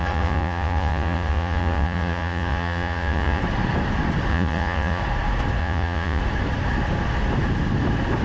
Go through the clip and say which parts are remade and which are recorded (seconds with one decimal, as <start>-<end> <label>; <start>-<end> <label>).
0.0-3.4 remade; 3.4-4.3 recorded; 4.3-5.0 remade; 5.0-5.6 recorded; 5.6-6.2 remade; 6.2-8.2 recorded